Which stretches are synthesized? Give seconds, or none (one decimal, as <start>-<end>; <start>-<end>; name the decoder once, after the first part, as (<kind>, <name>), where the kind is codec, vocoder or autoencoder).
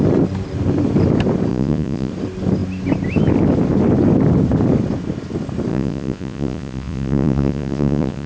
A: 1.5-2.1 (vocoder, Vocos); 5.7-8.3